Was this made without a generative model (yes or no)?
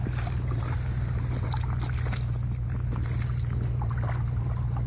yes